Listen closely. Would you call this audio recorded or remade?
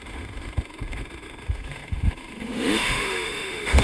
remade